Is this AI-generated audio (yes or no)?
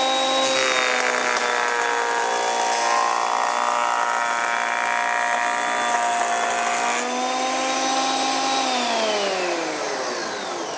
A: no